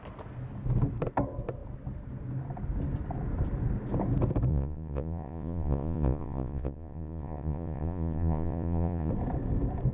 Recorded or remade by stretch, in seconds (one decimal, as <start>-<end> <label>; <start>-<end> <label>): 0.0-4.5 recorded; 4.5-9.1 remade; 9.1-9.9 recorded